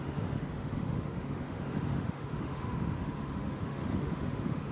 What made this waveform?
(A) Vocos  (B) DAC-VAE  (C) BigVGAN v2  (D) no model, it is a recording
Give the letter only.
B